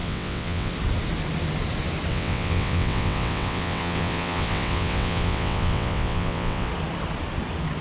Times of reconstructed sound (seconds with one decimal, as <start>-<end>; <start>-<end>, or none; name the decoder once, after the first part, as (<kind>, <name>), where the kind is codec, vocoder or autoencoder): 0.0-0.7 (vocoder, WaveNeXt); 2.1-6.7